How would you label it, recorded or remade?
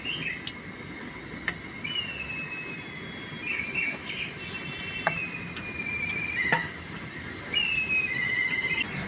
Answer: recorded